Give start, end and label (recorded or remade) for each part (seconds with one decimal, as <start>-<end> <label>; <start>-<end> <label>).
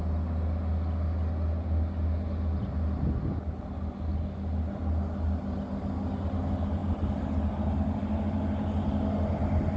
0.0-9.8 recorded